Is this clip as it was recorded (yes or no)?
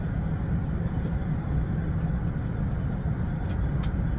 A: yes